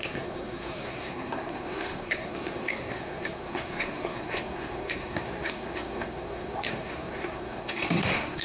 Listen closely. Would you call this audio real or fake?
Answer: fake